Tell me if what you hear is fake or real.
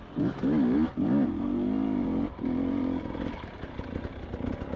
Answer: real